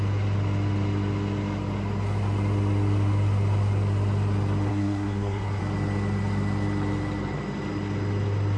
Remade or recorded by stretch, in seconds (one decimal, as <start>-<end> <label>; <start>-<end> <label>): 0.0-4.7 recorded; 4.7-5.6 remade; 5.6-8.6 recorded